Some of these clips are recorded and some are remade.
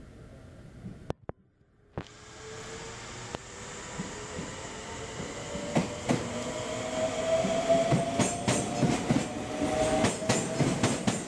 recorded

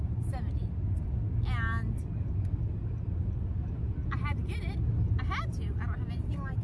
recorded